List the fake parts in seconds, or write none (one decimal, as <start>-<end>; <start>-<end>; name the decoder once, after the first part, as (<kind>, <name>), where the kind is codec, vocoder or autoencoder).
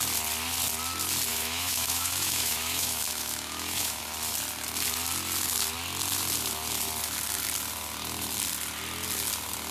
1.3-4.0 (autoencoder, DAC-VAE)